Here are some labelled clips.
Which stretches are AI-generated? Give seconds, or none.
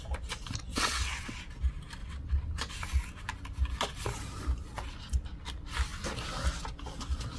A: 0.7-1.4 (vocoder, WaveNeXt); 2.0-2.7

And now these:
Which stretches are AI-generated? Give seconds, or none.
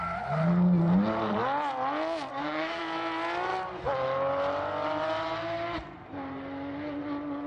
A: 2.3-2.8 (codec, SNAC)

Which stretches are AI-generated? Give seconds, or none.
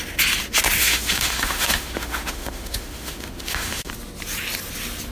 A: 0.8-3.9 (autoencoder, DAC-VAE)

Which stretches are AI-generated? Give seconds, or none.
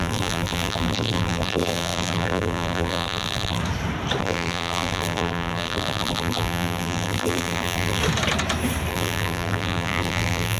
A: 0.0-3.6 (vocoder, BigVGAN v2); 4.2-8.0; 8.9-10.6